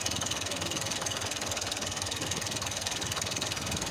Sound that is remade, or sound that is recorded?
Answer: remade